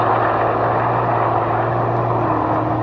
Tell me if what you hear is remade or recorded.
recorded